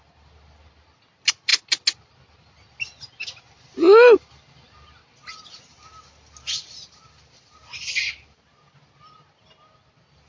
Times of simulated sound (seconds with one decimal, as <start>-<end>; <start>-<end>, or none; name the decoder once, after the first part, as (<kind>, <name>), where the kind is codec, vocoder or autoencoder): none